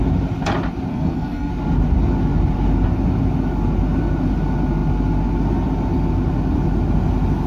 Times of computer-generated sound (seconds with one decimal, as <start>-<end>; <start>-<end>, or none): 0.9-1.5